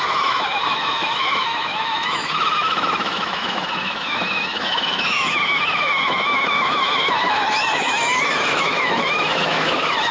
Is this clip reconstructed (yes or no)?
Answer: yes